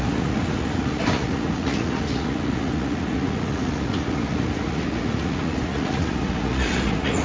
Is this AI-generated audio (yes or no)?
yes